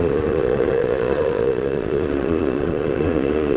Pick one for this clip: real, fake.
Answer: fake